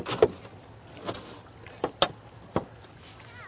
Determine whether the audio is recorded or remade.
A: recorded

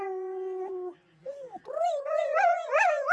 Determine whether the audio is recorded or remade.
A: remade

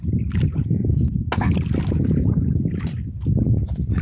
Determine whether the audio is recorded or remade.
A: recorded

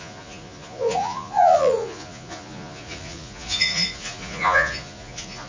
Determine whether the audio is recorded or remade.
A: remade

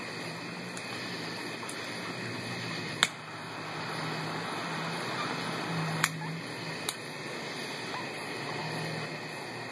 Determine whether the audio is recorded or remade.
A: recorded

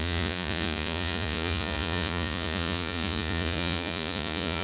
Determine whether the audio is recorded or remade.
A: remade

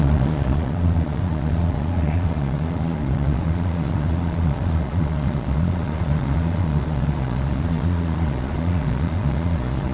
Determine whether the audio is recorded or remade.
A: remade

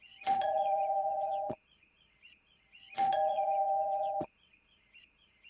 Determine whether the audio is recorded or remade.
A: remade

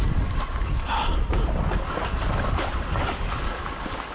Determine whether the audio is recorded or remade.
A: recorded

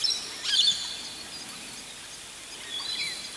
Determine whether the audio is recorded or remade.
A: recorded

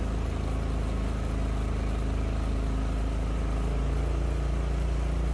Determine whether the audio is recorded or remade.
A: recorded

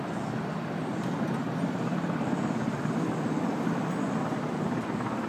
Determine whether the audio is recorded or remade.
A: recorded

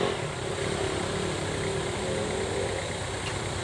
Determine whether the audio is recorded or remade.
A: recorded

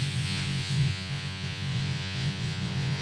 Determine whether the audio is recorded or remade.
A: remade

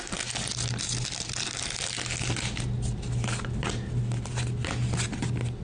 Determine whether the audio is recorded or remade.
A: recorded